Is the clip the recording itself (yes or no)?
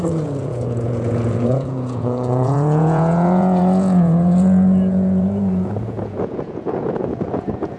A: no